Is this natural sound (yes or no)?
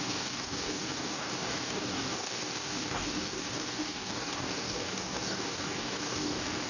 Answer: no